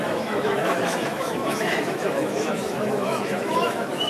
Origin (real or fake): fake